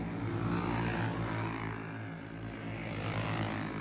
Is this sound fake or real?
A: real